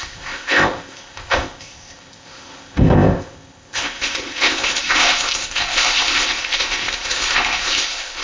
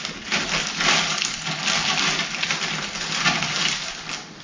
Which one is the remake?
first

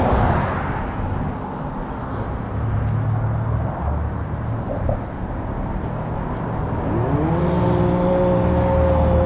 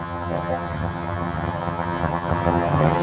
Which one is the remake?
second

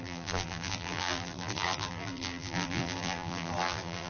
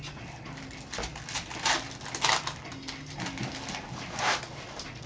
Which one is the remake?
first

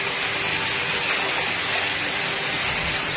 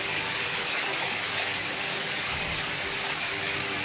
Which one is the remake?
second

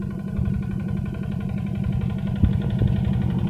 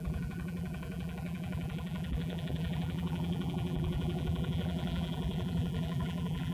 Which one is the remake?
second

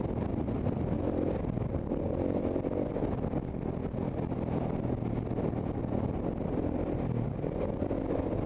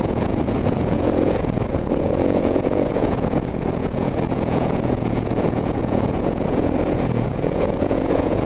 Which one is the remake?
second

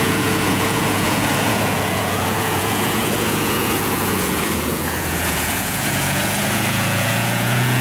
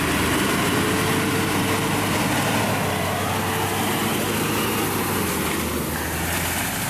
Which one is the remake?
first